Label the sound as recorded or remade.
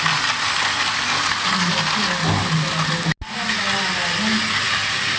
recorded